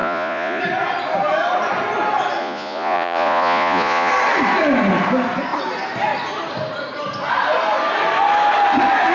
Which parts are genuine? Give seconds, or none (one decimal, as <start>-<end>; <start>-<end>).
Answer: 0.6-2.4; 4.1-9.1